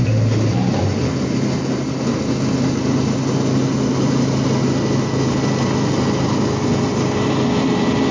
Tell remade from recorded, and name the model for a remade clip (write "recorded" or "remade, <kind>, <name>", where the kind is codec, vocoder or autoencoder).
recorded